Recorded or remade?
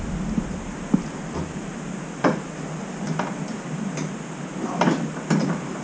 recorded